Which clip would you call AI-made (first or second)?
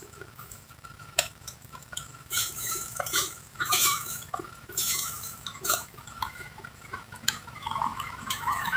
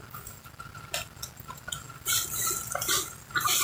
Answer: first